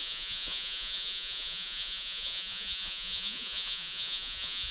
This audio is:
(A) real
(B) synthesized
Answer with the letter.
B